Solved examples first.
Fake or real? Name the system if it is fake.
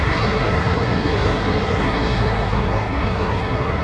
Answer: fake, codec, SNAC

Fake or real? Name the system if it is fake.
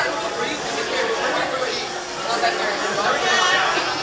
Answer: real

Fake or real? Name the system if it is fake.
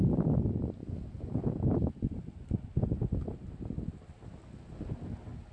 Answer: real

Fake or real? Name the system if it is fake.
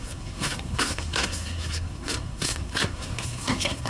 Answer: fake, codec, SNAC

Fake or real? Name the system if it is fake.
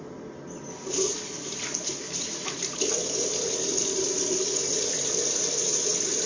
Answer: real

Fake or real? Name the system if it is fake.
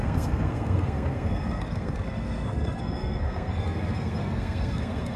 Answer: fake, codec, SNAC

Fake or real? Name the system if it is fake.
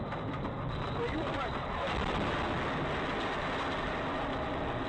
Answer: real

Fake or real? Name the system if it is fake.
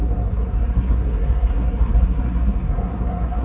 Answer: fake, codec, SNAC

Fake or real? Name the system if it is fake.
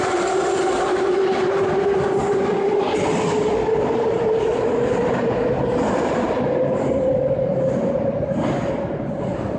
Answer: real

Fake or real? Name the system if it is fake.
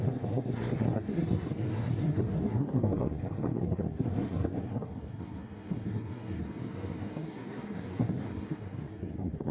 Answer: fake, codec, SNAC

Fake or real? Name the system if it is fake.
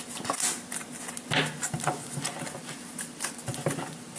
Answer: real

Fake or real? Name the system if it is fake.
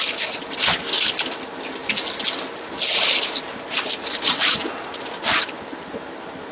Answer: real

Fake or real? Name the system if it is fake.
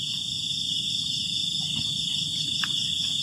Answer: real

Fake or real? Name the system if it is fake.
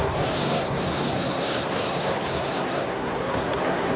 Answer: fake, codec, SNAC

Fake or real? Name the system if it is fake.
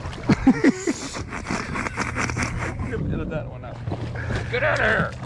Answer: real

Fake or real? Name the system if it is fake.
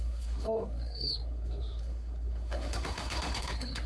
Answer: fake, codec, SNAC